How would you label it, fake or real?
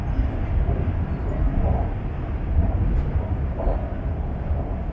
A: real